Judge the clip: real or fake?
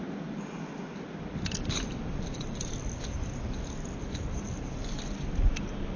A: real